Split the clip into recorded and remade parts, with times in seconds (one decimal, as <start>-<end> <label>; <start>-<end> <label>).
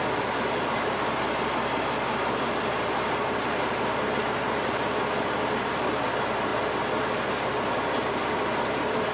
0.0-9.1 recorded